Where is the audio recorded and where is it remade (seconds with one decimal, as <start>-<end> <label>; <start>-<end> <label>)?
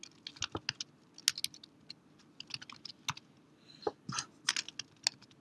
0.0-5.4 recorded